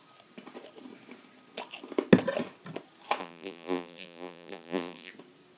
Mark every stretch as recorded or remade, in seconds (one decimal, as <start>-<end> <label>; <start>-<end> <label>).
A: 0.0-3.2 recorded; 3.2-5.1 remade; 5.1-5.6 recorded